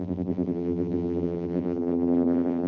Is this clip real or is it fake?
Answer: fake